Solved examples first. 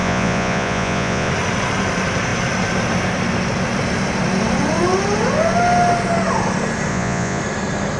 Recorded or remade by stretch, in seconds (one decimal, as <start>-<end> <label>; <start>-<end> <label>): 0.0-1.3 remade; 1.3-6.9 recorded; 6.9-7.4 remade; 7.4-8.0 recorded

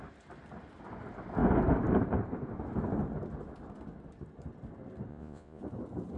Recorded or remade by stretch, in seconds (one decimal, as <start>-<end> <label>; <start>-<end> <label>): 0.0-5.1 recorded; 5.1-5.6 remade; 5.6-6.2 recorded

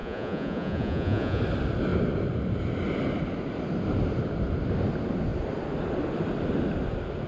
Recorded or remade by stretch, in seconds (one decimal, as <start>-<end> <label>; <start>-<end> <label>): 0.0-1.4 remade; 1.4-7.3 recorded

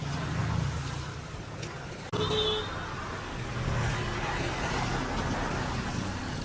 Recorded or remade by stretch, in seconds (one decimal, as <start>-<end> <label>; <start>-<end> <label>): 0.0-6.4 recorded

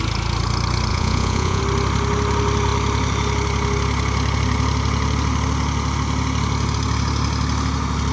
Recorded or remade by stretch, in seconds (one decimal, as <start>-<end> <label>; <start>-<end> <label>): 0.0-0.9 recorded; 0.9-1.6 remade; 1.6-8.1 recorded

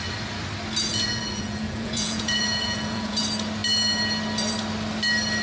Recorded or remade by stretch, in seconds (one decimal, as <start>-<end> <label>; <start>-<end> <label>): 0.0-0.9 recorded; 0.9-3.2 remade; 3.2-5.4 recorded

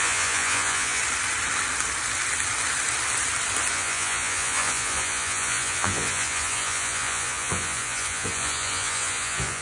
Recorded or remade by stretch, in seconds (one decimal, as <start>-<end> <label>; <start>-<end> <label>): 0.0-1.0 remade; 1.0-3.7 recorded; 3.7-9.6 remade

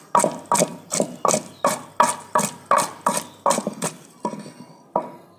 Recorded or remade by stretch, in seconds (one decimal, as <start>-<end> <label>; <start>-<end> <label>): 0.0-5.4 recorded